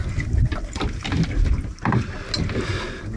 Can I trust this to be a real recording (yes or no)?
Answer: yes